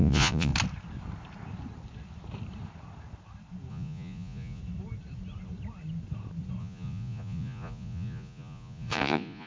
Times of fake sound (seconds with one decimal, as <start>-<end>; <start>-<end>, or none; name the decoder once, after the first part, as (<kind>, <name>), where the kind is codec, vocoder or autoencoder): 0.0-0.5 (vocoder, Vocos); 3.7-4.6; 6.6-9.5